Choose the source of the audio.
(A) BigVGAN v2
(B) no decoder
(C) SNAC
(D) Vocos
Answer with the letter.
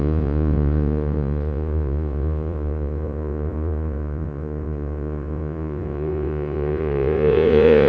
D